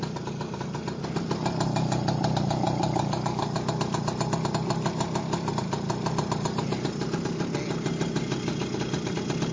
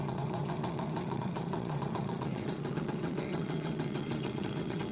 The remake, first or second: second